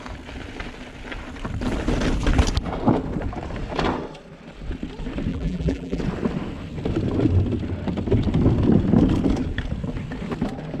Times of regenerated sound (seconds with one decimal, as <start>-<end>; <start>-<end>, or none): 5.3-6.0

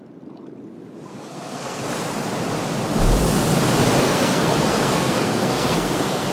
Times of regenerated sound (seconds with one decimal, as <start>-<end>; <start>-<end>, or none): 1.1-1.8; 4.0-6.3